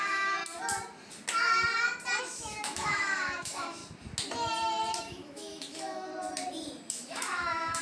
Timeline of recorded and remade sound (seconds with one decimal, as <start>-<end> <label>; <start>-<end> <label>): 0.0-0.4 remade; 0.4-2.2 recorded; 2.2-3.8 remade; 3.8-5.0 recorded; 5.0-6.1 remade; 6.1-6.9 recorded; 6.9-7.8 remade

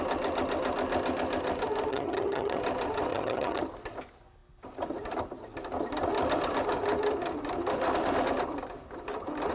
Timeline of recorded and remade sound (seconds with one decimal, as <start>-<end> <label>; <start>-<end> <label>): 0.0-1.9 recorded; 1.9-2.6 remade; 2.6-3.1 recorded; 3.1-3.6 remade; 3.6-9.5 recorded

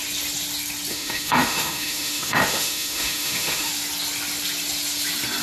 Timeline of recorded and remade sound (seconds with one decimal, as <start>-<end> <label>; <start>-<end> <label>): 0.0-0.9 recorded; 0.9-3.7 remade; 3.7-5.4 recorded

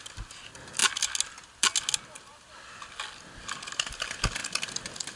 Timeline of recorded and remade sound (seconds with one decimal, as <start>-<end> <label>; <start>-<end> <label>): 0.0-5.2 recorded

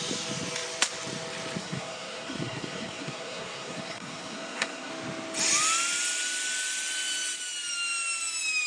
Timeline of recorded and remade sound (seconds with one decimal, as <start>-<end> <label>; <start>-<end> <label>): 0.0-1.6 recorded; 1.6-4.9 remade; 4.9-8.7 recorded

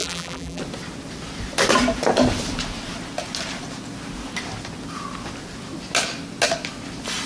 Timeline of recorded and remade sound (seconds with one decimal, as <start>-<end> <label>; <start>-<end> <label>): 0.0-0.6 remade; 0.6-7.3 recorded